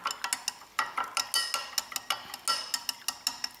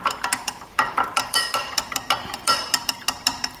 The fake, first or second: second